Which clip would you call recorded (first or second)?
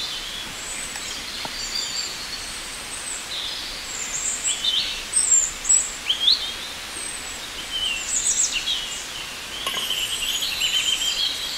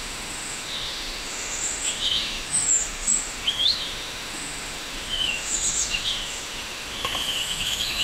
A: first